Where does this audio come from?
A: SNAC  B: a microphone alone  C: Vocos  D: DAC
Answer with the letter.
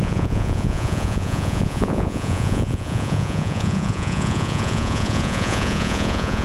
C